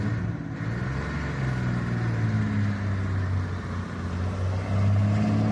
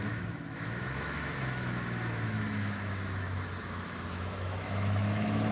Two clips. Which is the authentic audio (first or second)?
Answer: first